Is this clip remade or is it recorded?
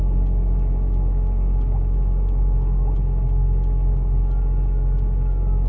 remade